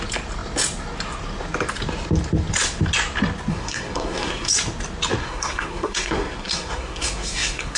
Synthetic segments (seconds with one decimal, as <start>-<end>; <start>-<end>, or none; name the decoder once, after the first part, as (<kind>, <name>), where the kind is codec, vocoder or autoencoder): 3.5-4.5 (codec, SNAC); 5.2-7.8